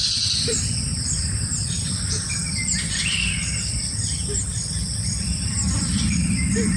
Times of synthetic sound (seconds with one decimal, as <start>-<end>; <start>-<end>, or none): 0.0-6.8